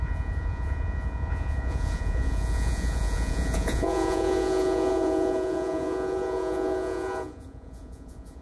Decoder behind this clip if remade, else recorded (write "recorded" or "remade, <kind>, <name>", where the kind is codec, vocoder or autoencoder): remade, vocoder, Vocos